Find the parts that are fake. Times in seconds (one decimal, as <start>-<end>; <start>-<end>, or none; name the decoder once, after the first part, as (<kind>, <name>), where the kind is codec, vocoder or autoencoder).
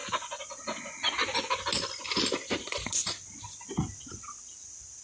none